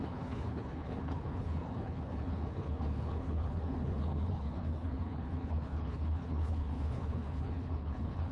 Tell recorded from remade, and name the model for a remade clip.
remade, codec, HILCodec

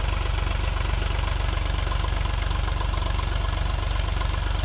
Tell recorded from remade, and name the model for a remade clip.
recorded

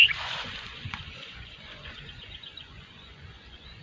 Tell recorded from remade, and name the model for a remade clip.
remade, vocoder, Vocos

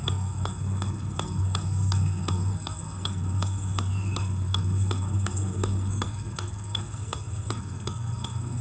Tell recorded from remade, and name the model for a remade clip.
remade, codec, SNAC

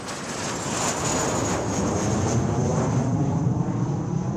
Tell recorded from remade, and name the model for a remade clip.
recorded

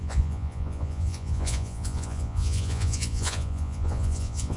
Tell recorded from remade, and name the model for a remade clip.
remade, vocoder, Vocos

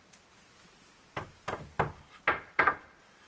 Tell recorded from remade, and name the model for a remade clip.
recorded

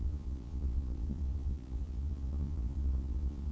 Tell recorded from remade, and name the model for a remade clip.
remade, vocoder, Vocos